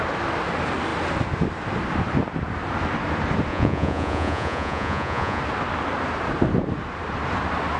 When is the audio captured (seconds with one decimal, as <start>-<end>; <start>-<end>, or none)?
0.0-3.5; 5.4-7.8